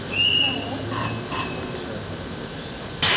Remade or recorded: recorded